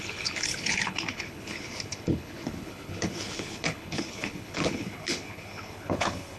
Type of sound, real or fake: fake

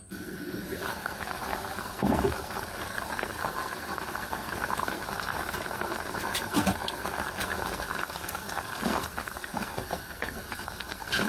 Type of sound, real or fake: fake